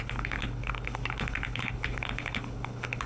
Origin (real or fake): fake